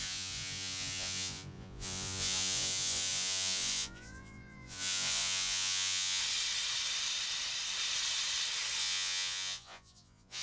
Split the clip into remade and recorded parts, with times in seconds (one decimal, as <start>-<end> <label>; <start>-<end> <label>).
0.0-6.2 remade; 6.2-8.8 recorded; 8.8-10.4 remade